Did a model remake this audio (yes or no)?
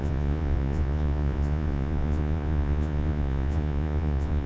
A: yes